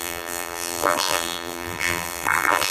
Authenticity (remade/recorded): remade